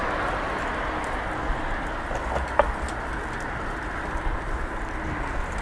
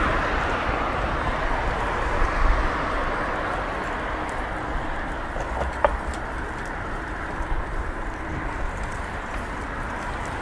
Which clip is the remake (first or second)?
second